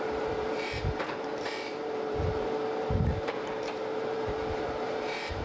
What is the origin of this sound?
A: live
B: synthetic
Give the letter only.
B